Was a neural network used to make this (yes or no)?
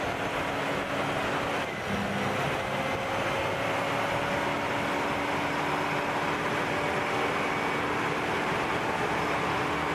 no